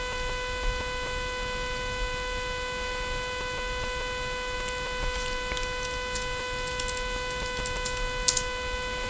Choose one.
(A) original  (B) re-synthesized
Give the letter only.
A